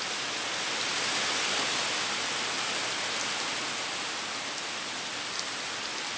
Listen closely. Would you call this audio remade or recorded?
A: recorded